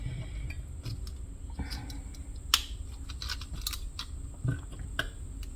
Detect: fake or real real